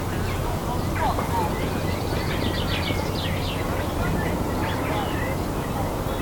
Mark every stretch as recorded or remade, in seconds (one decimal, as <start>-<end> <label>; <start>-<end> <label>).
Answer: 0.0-0.6 recorded; 0.6-4.3 remade; 4.3-6.2 recorded